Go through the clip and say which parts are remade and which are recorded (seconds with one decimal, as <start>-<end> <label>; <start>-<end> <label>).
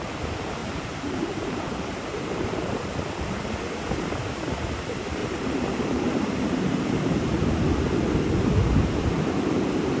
0.0-0.6 recorded; 0.6-2.9 remade; 2.9-5.2 recorded; 5.2-7.6 remade; 7.6-10.0 recorded